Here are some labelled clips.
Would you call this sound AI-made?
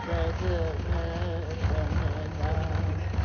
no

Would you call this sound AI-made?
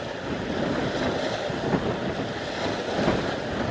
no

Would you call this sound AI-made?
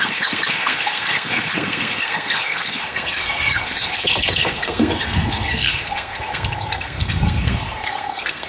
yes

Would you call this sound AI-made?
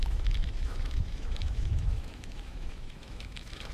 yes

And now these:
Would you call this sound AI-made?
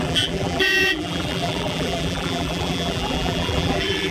yes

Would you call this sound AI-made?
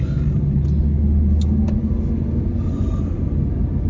no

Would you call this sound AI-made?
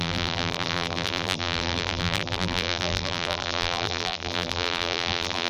yes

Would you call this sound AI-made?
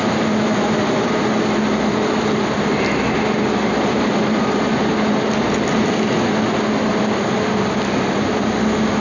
no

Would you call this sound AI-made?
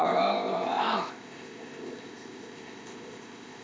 yes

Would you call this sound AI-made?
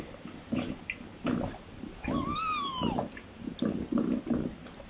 no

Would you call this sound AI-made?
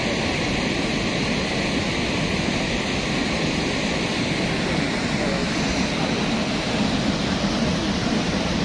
no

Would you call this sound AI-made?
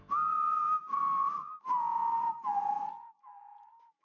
no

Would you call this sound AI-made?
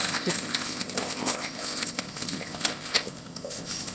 yes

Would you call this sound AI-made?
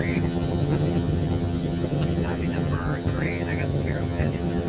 yes